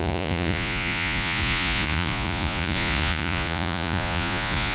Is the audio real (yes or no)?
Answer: no